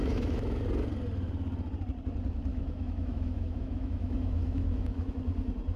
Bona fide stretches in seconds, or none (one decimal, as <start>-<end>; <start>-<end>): 0.6-2.5; 5.1-5.8